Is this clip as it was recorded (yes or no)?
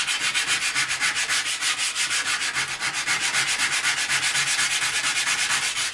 yes